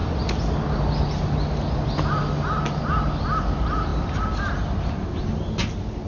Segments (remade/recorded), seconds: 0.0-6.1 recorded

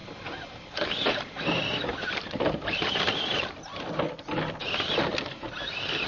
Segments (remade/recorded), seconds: 0.0-3.7 remade; 3.7-6.1 recorded

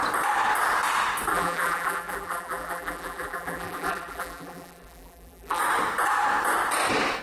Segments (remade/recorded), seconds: 0.0-1.3 recorded; 1.3-5.6 remade; 5.6-7.2 recorded

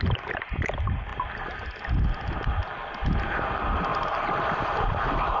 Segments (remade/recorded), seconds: 0.0-3.9 recorded; 3.9-5.4 remade

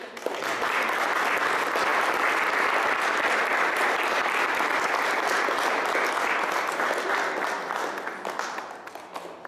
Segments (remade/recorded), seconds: 0.0-9.5 recorded

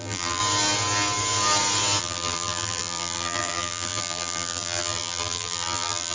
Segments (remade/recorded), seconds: 0.0-0.4 remade; 0.4-2.0 recorded; 2.0-6.1 remade

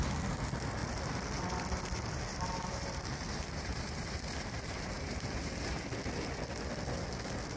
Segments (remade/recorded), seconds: 0.0-2.3 recorded; 2.3-5.8 remade; 5.8-7.6 recorded